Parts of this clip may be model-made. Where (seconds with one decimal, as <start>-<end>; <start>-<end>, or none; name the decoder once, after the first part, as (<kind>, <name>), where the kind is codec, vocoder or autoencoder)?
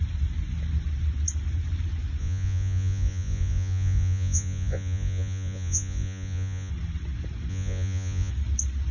2.2-6.7 (vocoder, Vocos); 7.5-8.3